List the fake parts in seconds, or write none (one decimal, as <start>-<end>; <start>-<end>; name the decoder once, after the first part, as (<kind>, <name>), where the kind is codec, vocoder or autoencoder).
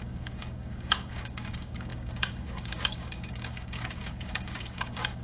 0.0-5.2 (codec, DAC)